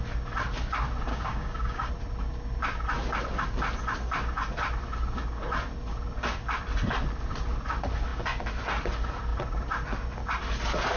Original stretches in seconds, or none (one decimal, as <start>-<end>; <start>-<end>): 0.0-1.1; 1.9-11.0